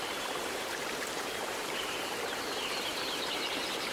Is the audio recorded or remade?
remade